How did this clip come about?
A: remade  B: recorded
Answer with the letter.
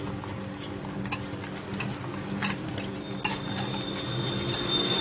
B